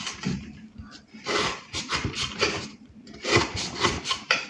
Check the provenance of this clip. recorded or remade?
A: remade